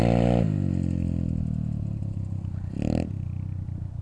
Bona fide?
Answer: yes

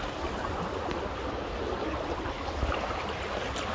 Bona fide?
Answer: yes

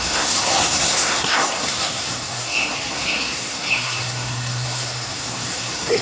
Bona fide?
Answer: no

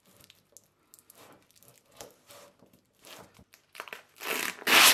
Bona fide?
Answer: yes